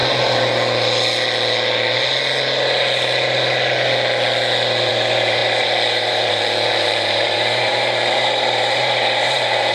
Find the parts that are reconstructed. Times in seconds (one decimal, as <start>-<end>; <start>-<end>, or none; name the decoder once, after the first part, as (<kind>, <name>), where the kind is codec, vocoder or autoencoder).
4.9-9.7 (vocoder, BigVGAN v2)